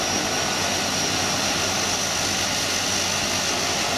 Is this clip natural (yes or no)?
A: yes